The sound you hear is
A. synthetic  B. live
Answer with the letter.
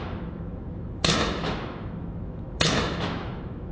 A